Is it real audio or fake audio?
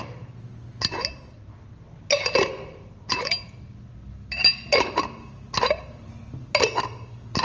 real